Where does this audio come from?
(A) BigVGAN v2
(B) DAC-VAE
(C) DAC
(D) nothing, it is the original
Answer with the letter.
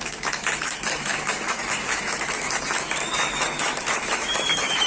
B